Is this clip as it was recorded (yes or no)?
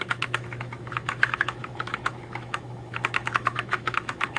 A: no